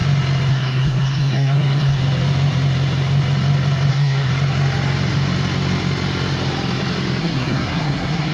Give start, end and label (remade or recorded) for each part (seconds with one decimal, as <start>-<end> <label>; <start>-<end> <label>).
0.0-0.5 recorded; 0.5-2.0 remade; 2.0-3.9 recorded; 3.9-4.3 remade; 4.3-7.2 recorded; 7.2-8.3 remade